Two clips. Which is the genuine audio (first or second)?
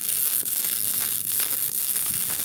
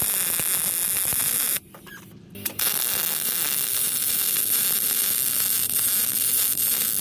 second